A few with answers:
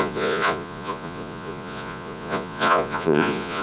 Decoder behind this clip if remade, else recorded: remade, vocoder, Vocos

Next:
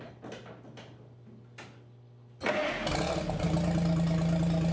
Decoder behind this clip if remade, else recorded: recorded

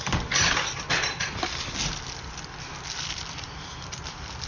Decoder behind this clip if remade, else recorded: recorded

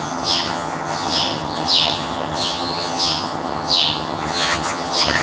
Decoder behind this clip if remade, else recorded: remade, vocoder, HiFi-GAN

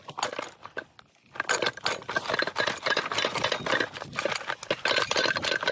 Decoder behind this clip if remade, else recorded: recorded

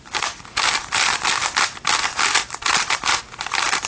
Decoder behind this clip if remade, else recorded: recorded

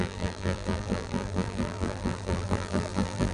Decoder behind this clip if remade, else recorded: remade, vocoder, BigVGAN v2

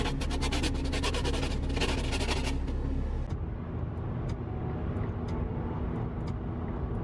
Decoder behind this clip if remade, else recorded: recorded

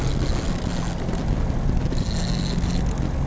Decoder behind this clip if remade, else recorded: recorded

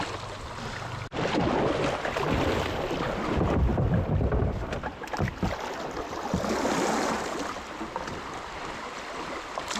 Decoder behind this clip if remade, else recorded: recorded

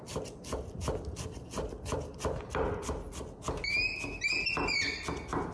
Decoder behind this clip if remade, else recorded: recorded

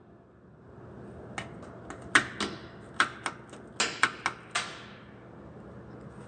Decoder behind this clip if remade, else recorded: recorded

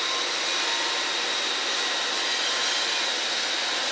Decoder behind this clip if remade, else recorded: recorded